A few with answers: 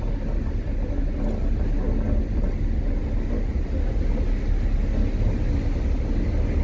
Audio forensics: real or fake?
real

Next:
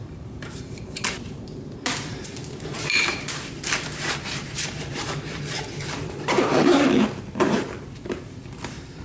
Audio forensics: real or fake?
fake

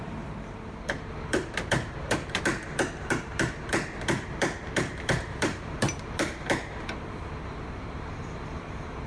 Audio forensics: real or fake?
fake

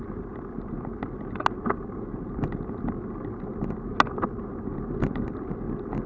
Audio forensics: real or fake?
real